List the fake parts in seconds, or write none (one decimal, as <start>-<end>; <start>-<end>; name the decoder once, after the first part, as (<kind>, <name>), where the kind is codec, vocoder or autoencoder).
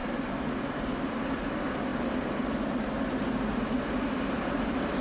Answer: 0.7-5.0 (vocoder, BigVGAN v2)